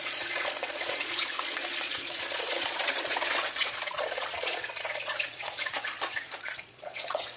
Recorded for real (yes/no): no